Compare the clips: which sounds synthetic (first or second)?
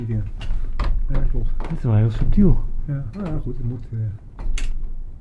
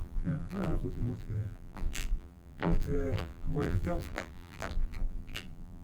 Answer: second